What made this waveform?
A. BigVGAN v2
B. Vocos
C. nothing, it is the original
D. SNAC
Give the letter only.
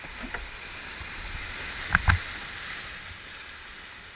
C